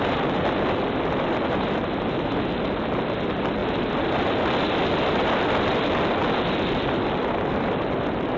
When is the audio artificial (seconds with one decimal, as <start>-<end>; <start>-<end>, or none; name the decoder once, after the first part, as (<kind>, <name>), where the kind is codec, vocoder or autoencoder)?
none